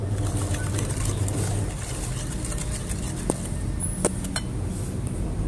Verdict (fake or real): real